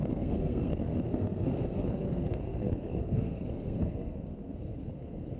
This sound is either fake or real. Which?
fake